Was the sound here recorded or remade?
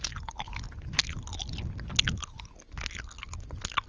recorded